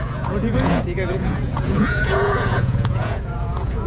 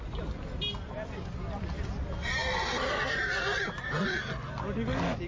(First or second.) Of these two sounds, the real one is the second